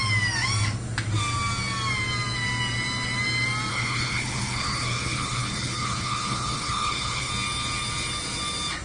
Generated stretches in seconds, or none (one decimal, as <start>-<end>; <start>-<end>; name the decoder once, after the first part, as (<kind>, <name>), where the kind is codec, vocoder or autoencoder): 3.7-7.3 (codec, HILCodec)